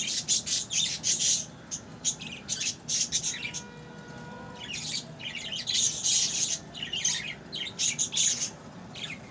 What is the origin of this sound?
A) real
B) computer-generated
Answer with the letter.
A